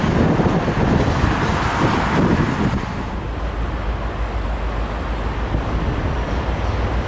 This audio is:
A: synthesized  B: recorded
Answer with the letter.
B